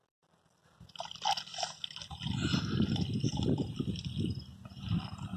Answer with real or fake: real